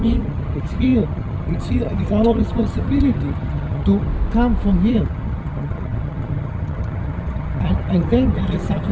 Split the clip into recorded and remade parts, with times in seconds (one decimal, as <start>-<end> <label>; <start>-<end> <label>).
0.0-4.1 remade; 4.1-4.9 recorded; 4.9-8.9 remade